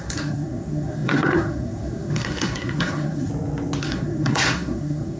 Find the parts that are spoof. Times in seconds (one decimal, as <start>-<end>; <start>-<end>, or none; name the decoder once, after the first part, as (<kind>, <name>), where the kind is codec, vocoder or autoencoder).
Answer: 0.0-3.3 (codec, SNAC); 3.8-5.2